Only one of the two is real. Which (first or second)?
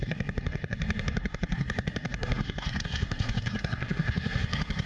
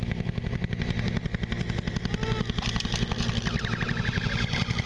second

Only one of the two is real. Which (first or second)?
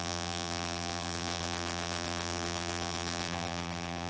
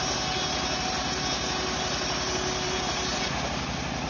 second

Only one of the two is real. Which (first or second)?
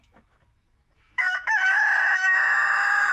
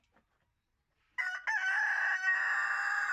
second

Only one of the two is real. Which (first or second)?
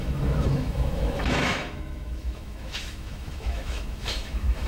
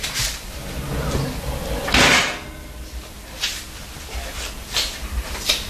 second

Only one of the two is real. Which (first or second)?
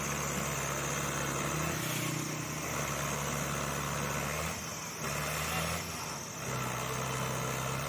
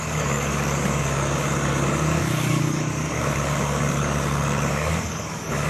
first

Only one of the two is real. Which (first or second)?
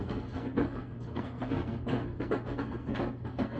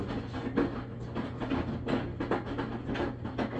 second